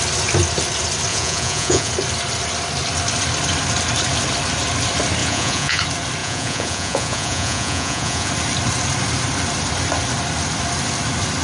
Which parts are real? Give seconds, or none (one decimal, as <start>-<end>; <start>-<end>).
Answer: 0.0-1.1; 1.9-5.2; 5.8-6.2; 8.3-11.4

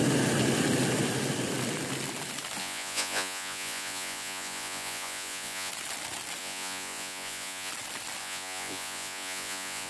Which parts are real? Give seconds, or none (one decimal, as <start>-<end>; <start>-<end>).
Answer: 0.0-2.6; 5.7-6.4; 7.7-8.2

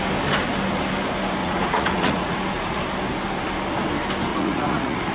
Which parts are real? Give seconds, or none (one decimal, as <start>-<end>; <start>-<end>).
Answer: 0.0-1.4; 2.8-4.3

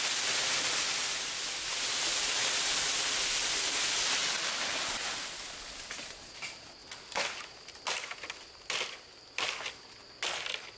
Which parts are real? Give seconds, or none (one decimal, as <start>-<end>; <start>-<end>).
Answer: 0.0-10.8

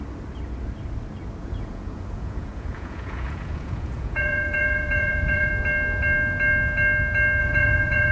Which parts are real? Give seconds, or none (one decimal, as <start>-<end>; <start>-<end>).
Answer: 0.0-1.4; 5.5-7.4

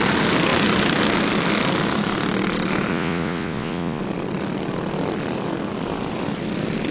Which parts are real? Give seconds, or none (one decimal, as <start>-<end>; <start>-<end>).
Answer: 0.0-2.9; 4.0-6.9